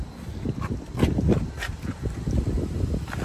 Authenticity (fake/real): real